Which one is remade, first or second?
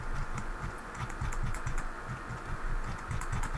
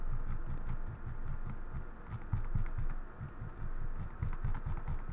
first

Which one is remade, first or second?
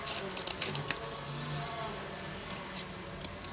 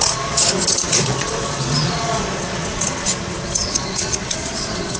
second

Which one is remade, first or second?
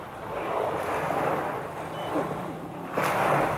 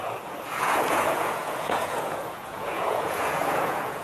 second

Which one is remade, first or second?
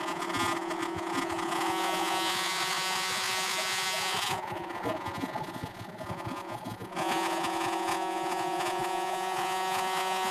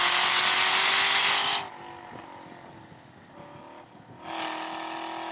first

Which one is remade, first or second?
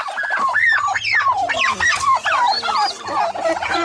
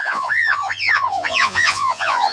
second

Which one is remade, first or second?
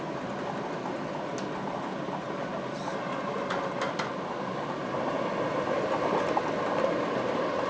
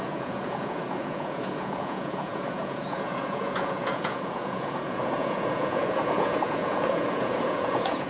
second